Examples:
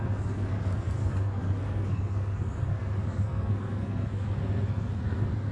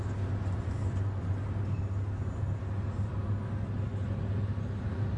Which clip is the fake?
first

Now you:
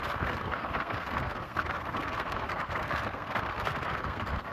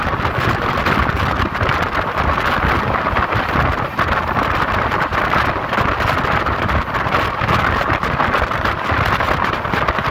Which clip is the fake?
first